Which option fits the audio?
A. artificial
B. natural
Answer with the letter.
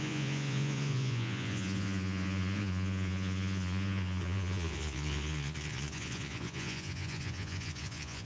A